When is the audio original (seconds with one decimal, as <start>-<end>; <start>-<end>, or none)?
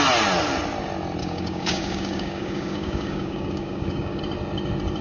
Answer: 0.0-1.2; 4.2-5.0